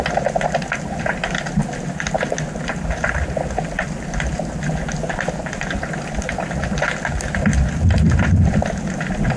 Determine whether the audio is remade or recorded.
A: recorded